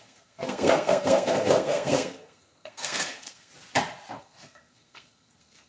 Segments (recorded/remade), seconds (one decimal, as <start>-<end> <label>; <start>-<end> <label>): 0.0-3.5 remade; 3.5-4.2 recorded; 4.2-5.7 remade